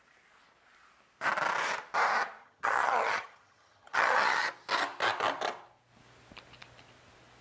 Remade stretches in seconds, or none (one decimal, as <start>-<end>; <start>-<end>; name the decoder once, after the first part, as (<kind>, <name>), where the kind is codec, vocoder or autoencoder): 2.4-4.5 (vocoder, HiFi-GAN)